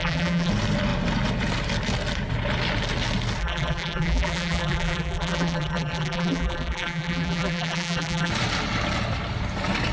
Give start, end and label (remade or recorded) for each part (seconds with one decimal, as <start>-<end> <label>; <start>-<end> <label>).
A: 0.0-0.5 remade; 0.5-3.4 recorded; 3.4-8.3 remade; 8.3-9.9 recorded